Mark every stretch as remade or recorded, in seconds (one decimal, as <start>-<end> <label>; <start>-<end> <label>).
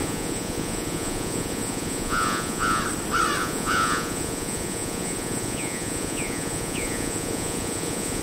0.0-2.8 remade; 2.8-3.4 recorded; 3.4-8.2 remade